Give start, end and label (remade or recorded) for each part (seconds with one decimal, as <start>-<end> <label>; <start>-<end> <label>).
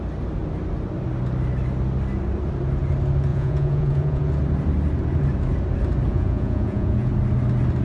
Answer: 0.0-3.3 recorded; 3.3-4.3 remade; 4.3-6.1 recorded; 6.1-7.1 remade; 7.1-7.8 recorded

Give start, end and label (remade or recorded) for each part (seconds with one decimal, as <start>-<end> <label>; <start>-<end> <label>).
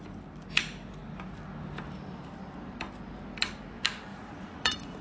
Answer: 0.0-4.1 recorded; 4.1-5.0 remade